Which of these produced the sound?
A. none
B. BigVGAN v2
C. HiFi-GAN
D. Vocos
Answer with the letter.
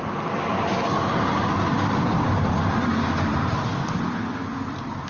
A